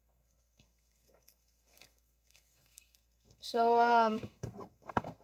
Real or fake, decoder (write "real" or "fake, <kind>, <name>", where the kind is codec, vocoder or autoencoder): fake, codec, SNAC